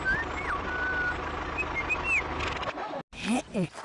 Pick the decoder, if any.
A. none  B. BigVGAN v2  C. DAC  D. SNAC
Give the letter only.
A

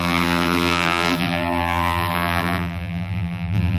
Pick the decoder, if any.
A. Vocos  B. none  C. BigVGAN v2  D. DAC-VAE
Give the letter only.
C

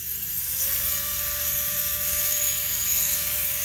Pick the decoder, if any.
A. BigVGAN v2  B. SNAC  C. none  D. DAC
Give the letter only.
B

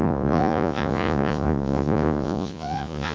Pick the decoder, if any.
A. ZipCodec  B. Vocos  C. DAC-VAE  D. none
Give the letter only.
B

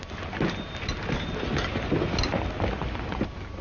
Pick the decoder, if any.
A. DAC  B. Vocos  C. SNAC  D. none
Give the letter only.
D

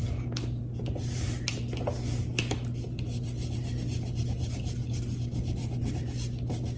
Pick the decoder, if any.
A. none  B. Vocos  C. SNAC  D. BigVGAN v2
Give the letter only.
A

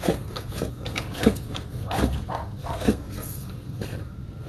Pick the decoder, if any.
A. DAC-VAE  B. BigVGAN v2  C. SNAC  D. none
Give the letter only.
C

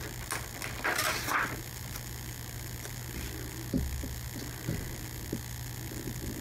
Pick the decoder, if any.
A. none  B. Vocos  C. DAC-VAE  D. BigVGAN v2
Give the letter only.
A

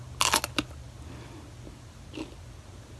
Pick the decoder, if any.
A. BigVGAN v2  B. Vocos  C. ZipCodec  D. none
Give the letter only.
D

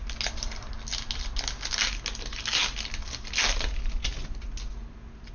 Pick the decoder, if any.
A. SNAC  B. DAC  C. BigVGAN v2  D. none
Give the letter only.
D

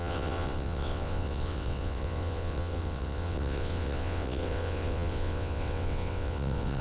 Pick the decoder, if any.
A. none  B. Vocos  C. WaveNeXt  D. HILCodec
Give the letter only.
C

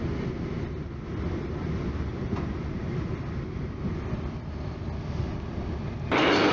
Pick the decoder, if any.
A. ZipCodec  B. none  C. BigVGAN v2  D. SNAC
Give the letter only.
B